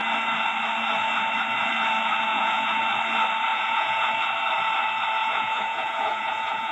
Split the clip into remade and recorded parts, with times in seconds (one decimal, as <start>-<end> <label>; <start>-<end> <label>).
0.0-2.3 recorded; 2.3-2.8 remade; 2.8-3.5 recorded; 3.5-4.1 remade; 4.1-5.2 recorded; 5.2-6.7 remade